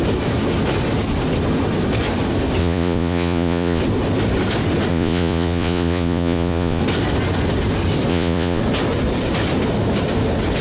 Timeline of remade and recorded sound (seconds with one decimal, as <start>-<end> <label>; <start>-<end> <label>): 0.0-2.6 recorded; 2.6-3.8 remade; 3.8-4.9 recorded; 4.9-6.8 remade; 6.8-8.1 recorded; 8.1-8.6 remade; 8.6-10.6 recorded